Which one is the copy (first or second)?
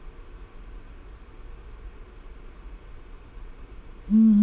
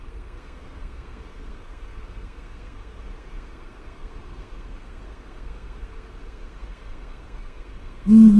second